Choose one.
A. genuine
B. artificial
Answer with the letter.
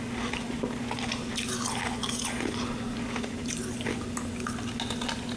A